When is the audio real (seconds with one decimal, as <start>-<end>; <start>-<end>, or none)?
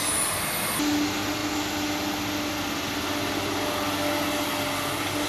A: 0.0-5.3